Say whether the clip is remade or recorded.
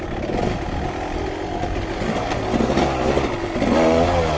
recorded